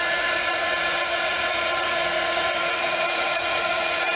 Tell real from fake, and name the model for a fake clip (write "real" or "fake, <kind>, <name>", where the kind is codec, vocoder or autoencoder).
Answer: fake, vocoder, Vocos